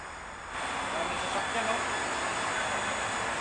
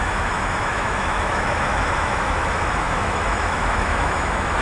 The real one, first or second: first